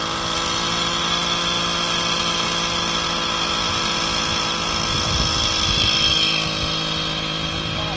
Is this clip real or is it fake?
real